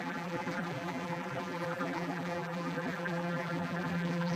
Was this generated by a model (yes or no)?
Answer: yes